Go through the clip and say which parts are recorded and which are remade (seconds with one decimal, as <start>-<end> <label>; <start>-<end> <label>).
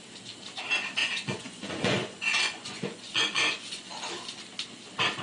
0.0-1.0 recorded; 1.0-4.0 remade; 4.0-5.2 recorded